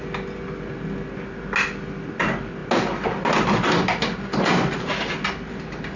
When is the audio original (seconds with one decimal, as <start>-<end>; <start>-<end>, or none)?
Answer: 0.0-6.0